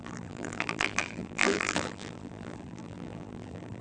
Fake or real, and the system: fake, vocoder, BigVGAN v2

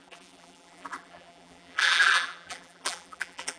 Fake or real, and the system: fake, vocoder, BigVGAN v2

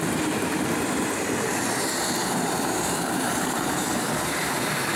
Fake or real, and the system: fake, vocoder, BigVGAN v2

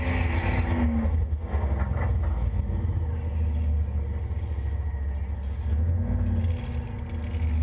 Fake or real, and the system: real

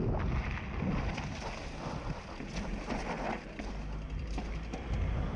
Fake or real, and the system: real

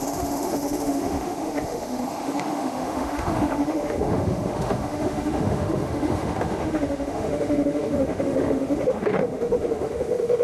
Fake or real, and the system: fake, autoencoder, DAC-VAE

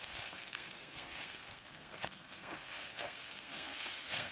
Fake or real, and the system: fake, codec, SNAC